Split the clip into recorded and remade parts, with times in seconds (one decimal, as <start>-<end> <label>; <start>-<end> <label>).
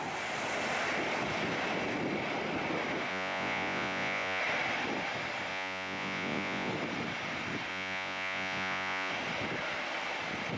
0.0-3.1 recorded; 3.1-4.4 remade; 4.4-5.5 recorded; 5.5-6.7 remade; 6.7-7.7 recorded; 7.7-9.1 remade; 9.1-10.6 recorded